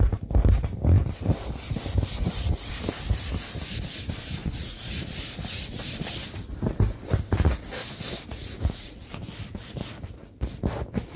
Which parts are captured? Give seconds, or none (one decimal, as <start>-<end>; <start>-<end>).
0.0-2.2; 2.7-4.4; 5.6-8.3; 9.1-11.2